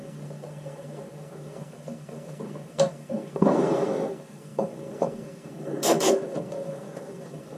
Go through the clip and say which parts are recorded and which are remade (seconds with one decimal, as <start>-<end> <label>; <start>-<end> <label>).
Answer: 0.0-7.6 remade